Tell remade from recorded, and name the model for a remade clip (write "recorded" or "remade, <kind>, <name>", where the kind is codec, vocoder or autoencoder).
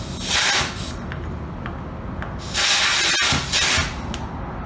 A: recorded